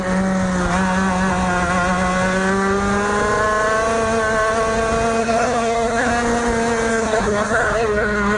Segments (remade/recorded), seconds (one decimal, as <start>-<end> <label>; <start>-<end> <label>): 0.0-5.2 recorded; 5.2-6.1 remade; 6.1-6.9 recorded; 6.9-8.4 remade